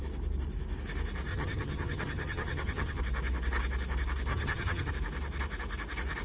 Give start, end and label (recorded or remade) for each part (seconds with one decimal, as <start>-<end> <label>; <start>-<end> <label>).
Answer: 0.0-1.3 recorded; 1.3-3.0 remade; 3.0-4.3 recorded; 4.3-4.9 remade; 4.9-6.2 recorded